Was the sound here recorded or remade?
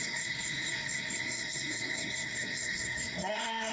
remade